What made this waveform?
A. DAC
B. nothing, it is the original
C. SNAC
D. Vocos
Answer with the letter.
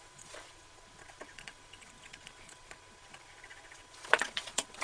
D